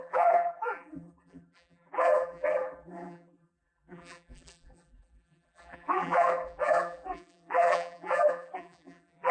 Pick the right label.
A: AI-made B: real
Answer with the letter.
A